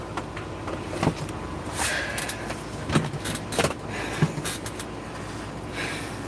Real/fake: real